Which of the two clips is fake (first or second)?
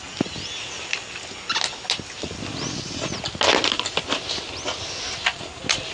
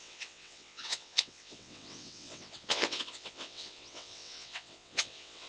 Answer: second